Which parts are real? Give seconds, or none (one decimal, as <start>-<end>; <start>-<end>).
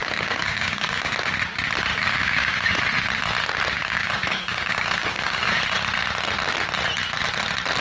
1.1-1.9; 2.7-3.8; 5.6-7.8